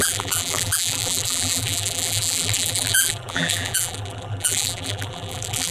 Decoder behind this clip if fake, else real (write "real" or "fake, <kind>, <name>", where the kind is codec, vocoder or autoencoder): fake, vocoder, BigVGAN v2